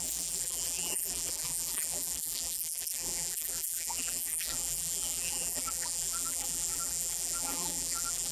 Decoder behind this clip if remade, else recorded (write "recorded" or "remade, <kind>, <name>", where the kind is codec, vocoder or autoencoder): remade, vocoder, BigVGAN v2